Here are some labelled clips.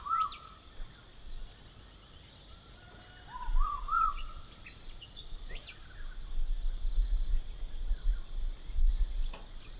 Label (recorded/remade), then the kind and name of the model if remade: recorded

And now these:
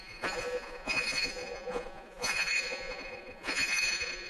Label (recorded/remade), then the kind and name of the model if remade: remade, vocoder, Vocos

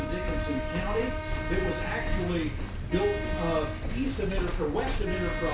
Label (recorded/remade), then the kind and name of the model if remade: recorded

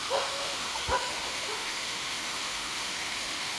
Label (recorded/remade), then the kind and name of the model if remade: remade, autoencoder, DAC-VAE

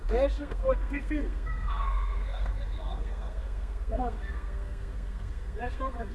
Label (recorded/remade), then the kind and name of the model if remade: remade, codec, SNAC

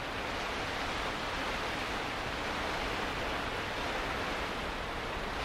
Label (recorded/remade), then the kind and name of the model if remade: recorded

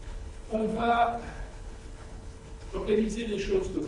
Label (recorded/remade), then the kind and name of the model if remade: remade, codec, HILCodec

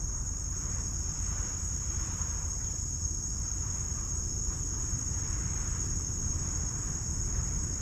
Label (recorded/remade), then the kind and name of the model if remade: remade, vocoder, BigVGAN v2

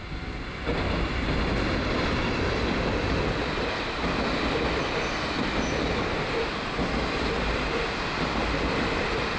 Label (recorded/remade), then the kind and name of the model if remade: recorded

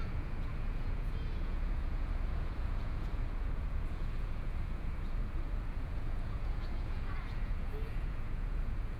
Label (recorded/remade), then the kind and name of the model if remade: remade, vocoder, Vocos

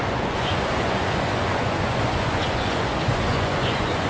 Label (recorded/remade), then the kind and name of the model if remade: remade, vocoder, Vocos